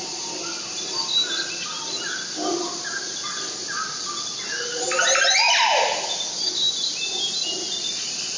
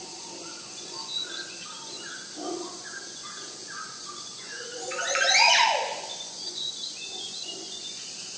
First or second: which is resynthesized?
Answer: second